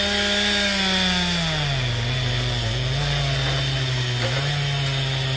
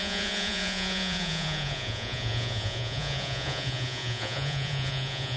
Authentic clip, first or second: first